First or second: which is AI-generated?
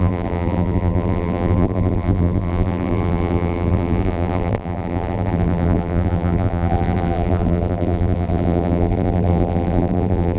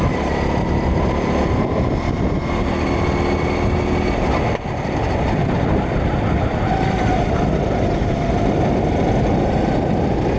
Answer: first